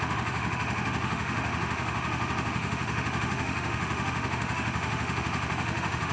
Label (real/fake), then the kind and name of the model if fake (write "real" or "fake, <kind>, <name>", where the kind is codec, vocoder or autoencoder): fake, autoencoder, DAC-VAE